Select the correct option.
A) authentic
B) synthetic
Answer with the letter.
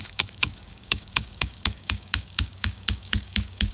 B